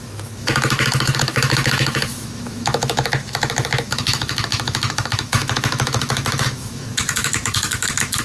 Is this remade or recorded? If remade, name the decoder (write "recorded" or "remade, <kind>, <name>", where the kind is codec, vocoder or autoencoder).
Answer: remade, autoencoder, DAC-VAE